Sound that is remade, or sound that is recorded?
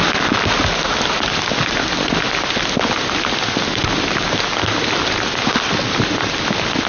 recorded